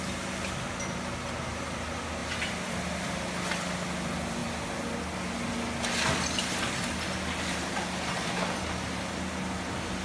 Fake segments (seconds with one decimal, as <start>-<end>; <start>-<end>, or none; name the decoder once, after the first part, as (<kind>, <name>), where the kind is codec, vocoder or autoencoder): none